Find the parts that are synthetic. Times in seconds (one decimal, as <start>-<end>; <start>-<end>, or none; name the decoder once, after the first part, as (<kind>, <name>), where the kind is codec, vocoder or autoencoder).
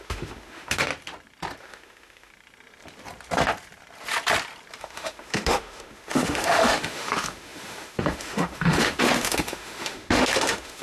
0.0-0.9 (autoencoder, DAC-VAE); 1.6-2.3; 4.8-10.8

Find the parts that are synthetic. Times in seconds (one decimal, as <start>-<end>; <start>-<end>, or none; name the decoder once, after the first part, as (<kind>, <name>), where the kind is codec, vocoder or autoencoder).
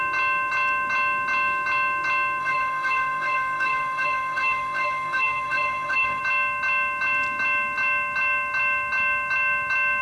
2.4-6.2 (autoencoder, DAC-VAE)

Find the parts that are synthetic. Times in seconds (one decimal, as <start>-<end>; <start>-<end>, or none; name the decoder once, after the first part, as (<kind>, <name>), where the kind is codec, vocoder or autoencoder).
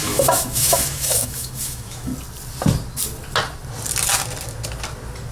0.0-2.1 (autoencoder, DAC-VAE)